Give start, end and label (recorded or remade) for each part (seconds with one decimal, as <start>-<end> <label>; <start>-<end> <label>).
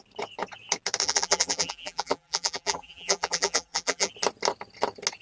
0.0-1.0 recorded; 1.0-4.1 remade; 4.1-5.2 recorded